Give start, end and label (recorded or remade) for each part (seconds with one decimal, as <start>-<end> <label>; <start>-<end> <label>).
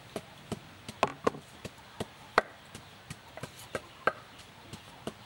0.0-5.3 recorded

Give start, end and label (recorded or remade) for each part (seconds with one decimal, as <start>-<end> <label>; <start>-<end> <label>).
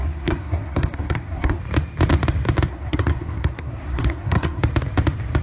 0.0-1.6 remade; 1.6-2.7 recorded; 2.7-4.6 remade; 4.6-5.4 recorded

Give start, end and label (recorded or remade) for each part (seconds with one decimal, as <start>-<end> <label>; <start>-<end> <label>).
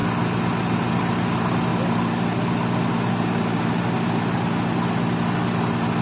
0.0-6.0 recorded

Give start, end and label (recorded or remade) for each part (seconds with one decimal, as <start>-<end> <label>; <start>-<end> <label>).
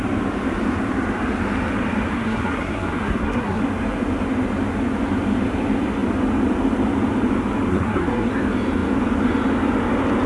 0.0-2.1 recorded; 2.1-3.6 remade; 3.6-7.7 recorded; 7.7-8.3 remade; 8.3-10.3 recorded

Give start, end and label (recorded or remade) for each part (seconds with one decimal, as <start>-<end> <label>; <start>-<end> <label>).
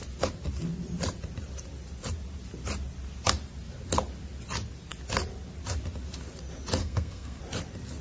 0.0-6.8 recorded; 6.8-7.4 remade; 7.4-8.0 recorded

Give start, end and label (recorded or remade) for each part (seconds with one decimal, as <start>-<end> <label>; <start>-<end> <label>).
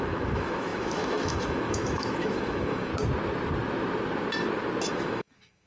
0.0-2.9 remade; 2.9-4.9 recorded; 4.9-5.7 remade